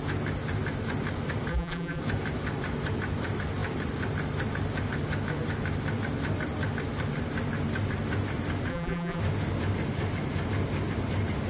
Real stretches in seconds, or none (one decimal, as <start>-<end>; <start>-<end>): 0.0-1.5; 2.0-8.7; 9.2-11.5